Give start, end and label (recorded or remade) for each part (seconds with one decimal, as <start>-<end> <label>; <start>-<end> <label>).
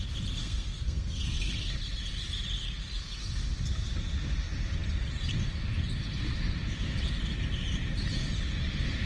0.0-0.4 recorded; 0.4-1.5 remade; 1.5-9.1 recorded